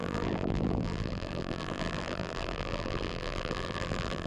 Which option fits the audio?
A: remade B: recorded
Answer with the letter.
A